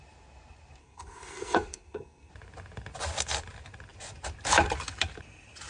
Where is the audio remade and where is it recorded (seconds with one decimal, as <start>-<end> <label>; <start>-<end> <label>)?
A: 0.0-0.8 recorded; 0.8-2.3 remade; 2.3-5.7 recorded